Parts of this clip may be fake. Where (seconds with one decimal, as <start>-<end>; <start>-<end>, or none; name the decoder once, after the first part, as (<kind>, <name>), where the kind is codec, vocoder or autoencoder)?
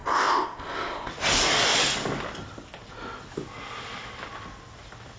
0.0-1.1 (codec, ZipCodec)